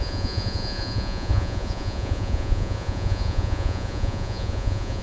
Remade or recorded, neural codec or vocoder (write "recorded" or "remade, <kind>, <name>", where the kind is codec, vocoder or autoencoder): remade, vocoder, Vocos